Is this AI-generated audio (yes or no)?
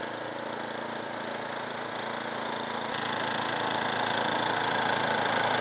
no